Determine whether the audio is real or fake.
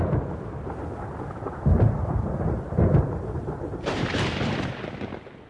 real